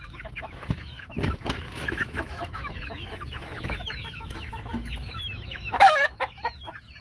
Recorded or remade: remade